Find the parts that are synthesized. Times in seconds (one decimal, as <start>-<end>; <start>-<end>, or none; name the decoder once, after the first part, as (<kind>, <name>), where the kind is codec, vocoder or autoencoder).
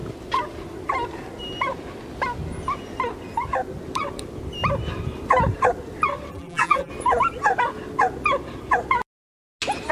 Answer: 6.3-6.9 (vocoder, BigVGAN v2)